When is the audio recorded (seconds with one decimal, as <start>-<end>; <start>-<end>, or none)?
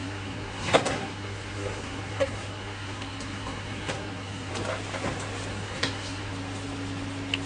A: 4.5-5.5; 6.3-7.5